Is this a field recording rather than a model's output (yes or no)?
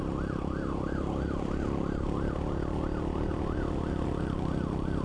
yes